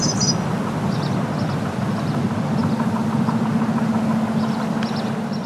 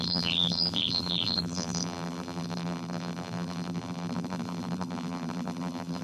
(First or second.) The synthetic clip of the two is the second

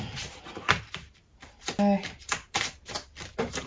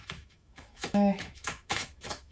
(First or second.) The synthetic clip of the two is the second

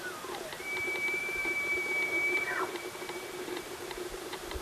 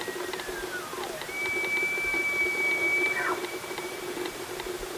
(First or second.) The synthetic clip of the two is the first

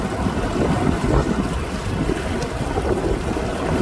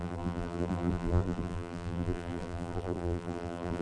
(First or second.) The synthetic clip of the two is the second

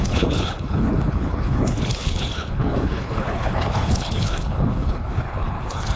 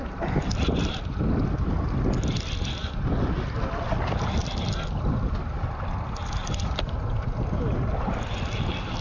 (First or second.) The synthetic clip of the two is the first